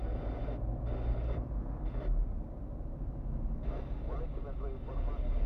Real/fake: real